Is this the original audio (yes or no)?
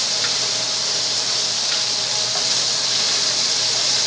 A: no